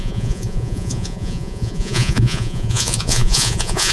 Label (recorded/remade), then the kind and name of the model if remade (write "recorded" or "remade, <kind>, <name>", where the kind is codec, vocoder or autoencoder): remade, vocoder, Vocos